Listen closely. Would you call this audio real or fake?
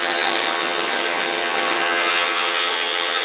fake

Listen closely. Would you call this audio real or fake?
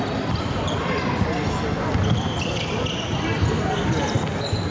real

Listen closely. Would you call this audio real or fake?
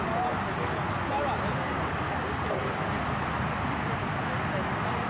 real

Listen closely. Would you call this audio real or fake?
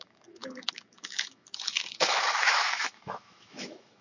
fake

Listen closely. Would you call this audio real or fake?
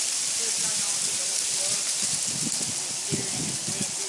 real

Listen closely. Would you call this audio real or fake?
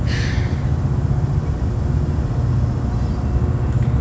real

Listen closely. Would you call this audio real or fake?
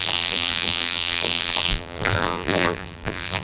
fake